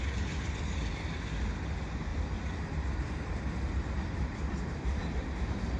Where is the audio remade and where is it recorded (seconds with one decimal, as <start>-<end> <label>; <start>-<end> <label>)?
0.0-2.1 recorded; 2.1-3.4 remade; 3.4-4.3 recorded; 4.3-5.0 remade; 5.0-5.8 recorded